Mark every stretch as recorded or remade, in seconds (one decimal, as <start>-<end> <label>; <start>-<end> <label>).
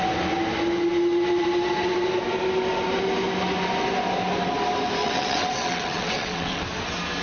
0.0-5.0 recorded; 5.0-6.6 remade; 6.6-7.2 recorded